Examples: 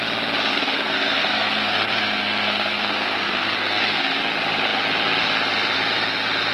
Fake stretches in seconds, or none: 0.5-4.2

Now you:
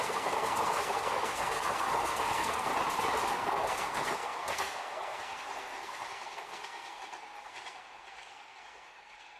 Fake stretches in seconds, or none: 0.0-2.7; 3.3-9.4

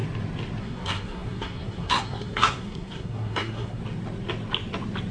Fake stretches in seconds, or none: 0.6-3.8